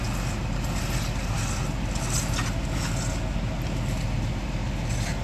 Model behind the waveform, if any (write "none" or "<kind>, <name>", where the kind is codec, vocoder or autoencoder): none